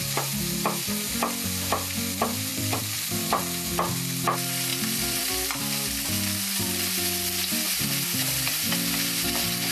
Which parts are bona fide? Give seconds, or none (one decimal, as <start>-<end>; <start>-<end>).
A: 0.0-2.5; 3.4-4.7; 5.3-9.7